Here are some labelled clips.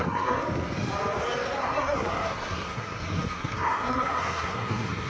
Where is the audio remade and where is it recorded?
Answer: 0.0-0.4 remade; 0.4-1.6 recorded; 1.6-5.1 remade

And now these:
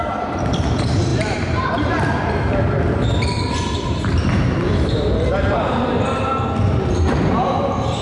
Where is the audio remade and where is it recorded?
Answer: 0.0-6.3 remade; 6.3-7.6 recorded; 7.6-8.0 remade

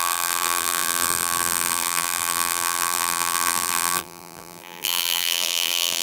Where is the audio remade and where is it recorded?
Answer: 0.0-6.0 remade

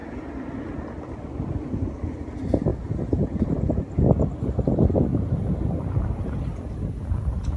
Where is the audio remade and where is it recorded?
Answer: 0.0-7.6 recorded

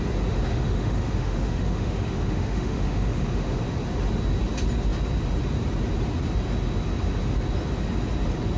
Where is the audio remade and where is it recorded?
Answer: 0.0-0.5 recorded; 0.5-3.6 remade; 3.6-8.6 recorded

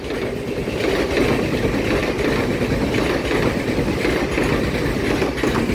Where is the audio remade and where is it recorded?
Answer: 0.0-5.7 recorded

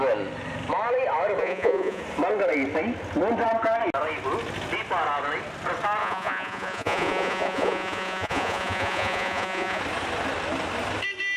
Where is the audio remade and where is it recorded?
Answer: 0.0-1.4 recorded; 1.4-2.0 remade; 2.0-6.0 recorded; 6.0-9.8 remade; 9.8-11.4 recorded

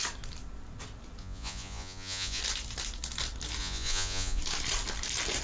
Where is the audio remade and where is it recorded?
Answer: 0.0-1.2 recorded; 1.2-2.4 remade; 2.4-3.6 recorded; 3.6-4.4 remade; 4.4-5.4 recorded